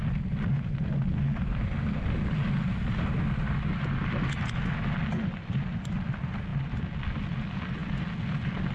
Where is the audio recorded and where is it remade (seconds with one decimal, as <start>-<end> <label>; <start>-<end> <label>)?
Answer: 0.0-8.7 recorded